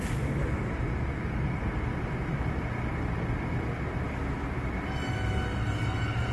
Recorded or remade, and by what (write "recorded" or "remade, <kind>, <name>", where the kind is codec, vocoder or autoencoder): recorded